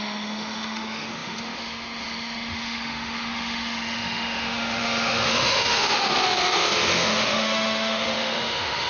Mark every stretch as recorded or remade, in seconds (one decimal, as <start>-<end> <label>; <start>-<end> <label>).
0.0-8.9 remade